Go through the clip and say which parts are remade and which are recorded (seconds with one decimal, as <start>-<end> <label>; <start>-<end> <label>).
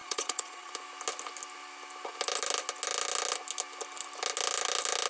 0.0-0.7 remade; 0.7-5.1 recorded